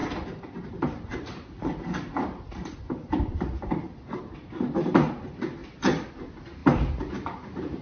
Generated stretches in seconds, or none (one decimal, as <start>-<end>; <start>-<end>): 0.7-5.6; 6.1-6.6; 7.1-7.8